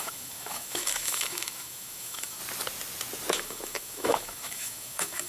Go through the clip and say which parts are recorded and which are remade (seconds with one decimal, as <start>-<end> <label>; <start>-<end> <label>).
0.0-2.4 remade; 2.4-3.3 recorded; 3.3-5.3 remade

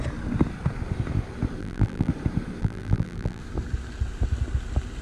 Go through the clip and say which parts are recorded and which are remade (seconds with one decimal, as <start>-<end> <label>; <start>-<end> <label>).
0.0-1.6 recorded; 1.6-2.1 remade; 2.1-2.6 recorded; 2.6-3.4 remade; 3.4-5.0 recorded